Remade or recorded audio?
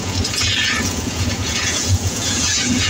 remade